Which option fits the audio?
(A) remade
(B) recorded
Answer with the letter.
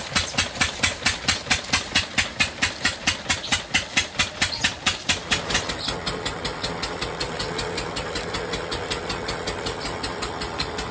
B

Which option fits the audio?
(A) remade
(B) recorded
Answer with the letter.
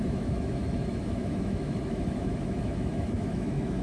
A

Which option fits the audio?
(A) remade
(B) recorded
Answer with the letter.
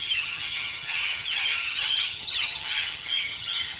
A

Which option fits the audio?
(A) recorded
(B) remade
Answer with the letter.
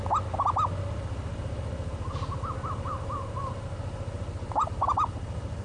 A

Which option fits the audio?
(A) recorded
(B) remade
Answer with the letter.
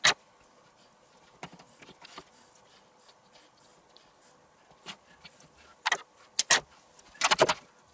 A